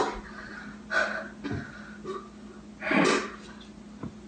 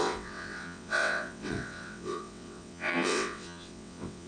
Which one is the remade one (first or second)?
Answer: second